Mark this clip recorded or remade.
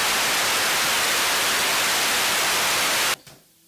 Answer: recorded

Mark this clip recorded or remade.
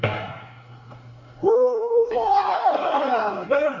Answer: remade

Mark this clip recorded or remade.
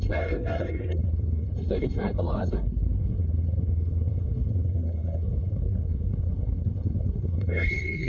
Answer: remade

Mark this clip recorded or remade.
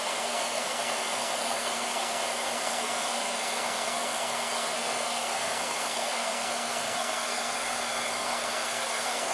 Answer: remade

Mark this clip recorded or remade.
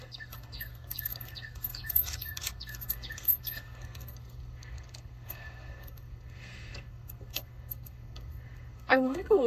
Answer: remade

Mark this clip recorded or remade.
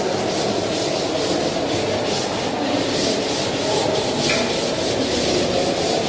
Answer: recorded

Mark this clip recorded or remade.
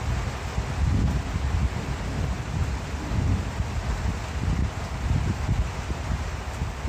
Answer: recorded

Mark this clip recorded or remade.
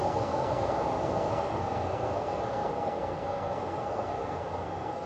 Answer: remade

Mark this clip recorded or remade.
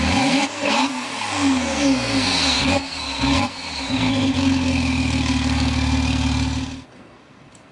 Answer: remade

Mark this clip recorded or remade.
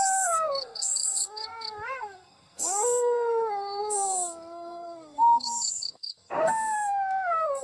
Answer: remade